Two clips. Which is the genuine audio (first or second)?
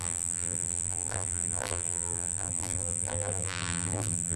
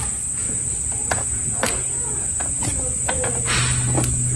second